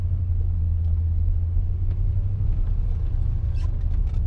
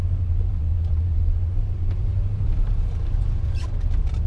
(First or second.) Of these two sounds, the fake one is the second